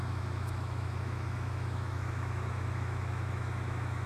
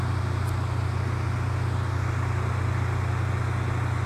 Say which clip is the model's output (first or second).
first